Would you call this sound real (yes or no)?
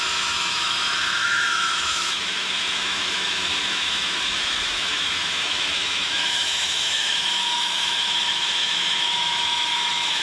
no